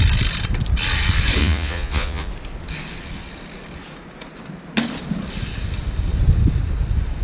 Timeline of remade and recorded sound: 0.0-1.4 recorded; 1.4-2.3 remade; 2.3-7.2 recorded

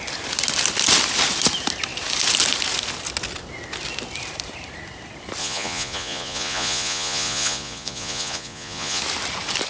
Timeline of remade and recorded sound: 0.0-5.4 recorded; 5.4-9.0 remade; 9.0-9.7 recorded

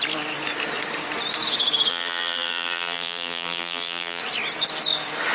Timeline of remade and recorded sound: 0.0-1.9 recorded; 1.9-4.2 remade; 4.2-5.3 recorded

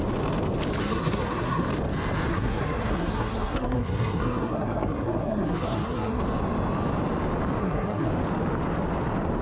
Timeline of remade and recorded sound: 0.0-0.8 recorded; 0.8-1.6 remade; 1.6-2.3 recorded; 2.3-6.2 remade; 6.2-7.6 recorded; 7.6-8.1 remade; 8.1-9.4 recorded

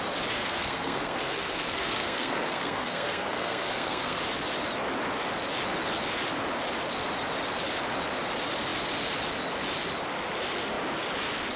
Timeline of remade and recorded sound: 0.0-0.4 recorded; 0.4-4.2 remade; 4.2-11.6 recorded

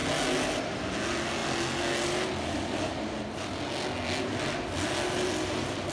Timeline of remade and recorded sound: 0.0-5.9 recorded

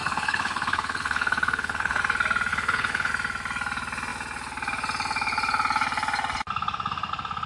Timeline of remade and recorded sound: 0.0-2.0 remade; 2.0-2.5 recorded; 2.5-3.1 remade; 3.1-7.5 recorded

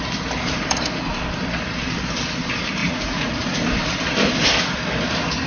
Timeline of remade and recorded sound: 0.0-2.8 recorded; 2.8-3.6 remade; 3.6-5.5 recorded